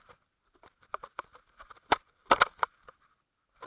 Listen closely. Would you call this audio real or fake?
real